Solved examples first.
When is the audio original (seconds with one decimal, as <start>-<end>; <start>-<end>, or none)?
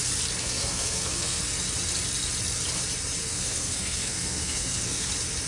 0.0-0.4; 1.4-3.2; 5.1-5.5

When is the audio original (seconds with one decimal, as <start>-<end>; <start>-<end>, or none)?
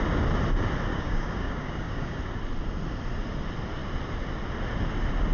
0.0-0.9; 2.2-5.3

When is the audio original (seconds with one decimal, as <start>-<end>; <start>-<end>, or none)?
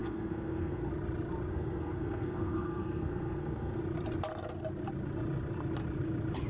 0.9-1.5; 3.8-6.5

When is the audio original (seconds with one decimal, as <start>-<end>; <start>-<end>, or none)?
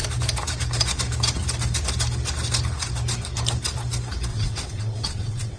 0.0-4.3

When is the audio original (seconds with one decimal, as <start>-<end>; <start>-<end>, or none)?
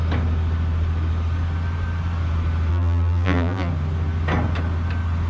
0.0-2.7; 3.7-5.3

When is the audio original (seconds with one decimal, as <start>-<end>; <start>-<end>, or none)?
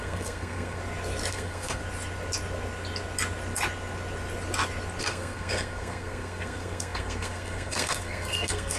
0.8-1.3; 1.8-5.0